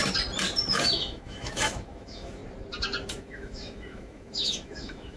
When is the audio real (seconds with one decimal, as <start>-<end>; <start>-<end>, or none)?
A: 0.0-0.7; 2.4-3.1